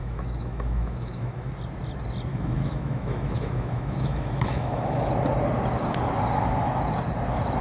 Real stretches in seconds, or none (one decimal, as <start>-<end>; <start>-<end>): 1.5-2.3; 5.1-7.6